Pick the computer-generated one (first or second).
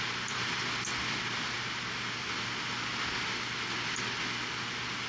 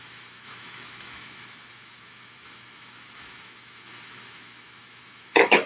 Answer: second